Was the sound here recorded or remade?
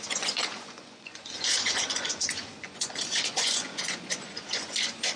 remade